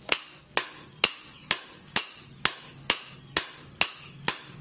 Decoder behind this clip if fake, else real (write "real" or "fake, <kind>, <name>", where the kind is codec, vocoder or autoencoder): real